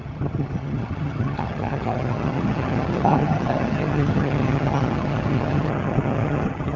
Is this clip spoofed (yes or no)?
yes